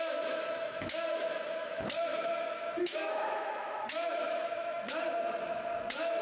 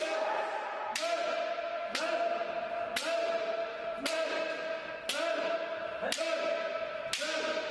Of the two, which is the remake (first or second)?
first